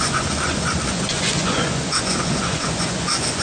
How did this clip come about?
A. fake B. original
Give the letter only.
A